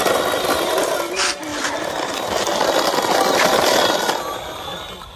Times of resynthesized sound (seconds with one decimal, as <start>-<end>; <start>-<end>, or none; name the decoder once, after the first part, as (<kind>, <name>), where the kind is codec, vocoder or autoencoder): 1.5-2.5 (vocoder, BigVGAN v2)